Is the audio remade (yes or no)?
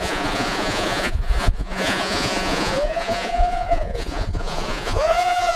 yes